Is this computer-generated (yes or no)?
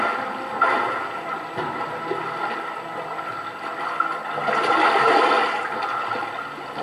yes